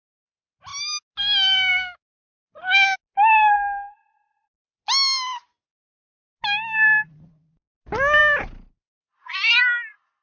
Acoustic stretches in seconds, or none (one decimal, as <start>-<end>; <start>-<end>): 0.0-10.2

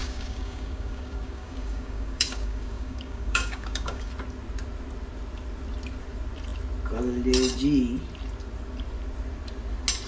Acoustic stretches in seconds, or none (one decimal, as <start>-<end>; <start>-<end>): 4.1-10.1